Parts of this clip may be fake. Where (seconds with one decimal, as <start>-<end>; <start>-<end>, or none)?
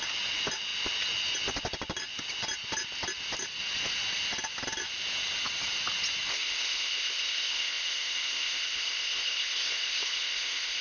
6.3-10.8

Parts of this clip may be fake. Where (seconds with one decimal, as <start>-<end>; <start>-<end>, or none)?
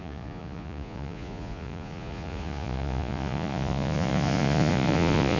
0.0-5.4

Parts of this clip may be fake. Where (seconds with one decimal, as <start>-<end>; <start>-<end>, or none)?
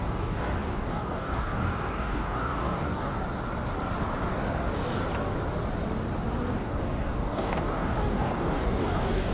0.0-3.1; 6.6-9.3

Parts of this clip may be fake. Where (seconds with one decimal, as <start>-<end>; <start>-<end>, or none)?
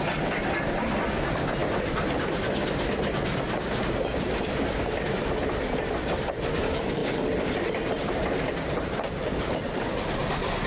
1.6-3.2